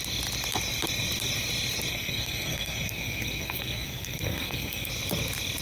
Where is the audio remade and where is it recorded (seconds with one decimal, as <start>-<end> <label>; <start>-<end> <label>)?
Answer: 0.0-1.9 recorded; 1.9-4.9 remade; 4.9-5.6 recorded